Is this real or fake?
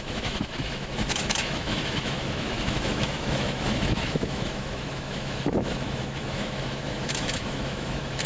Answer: fake